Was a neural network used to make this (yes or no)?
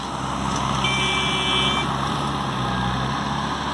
no